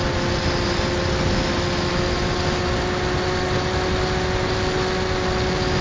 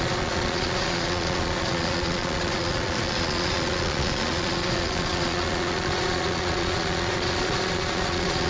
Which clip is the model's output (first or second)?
second